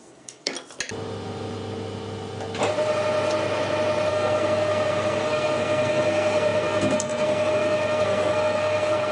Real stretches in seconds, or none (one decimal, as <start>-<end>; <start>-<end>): 0.5-4.1